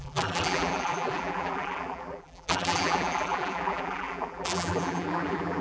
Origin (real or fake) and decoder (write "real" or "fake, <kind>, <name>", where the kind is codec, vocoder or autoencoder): fake, vocoder, BigVGAN v2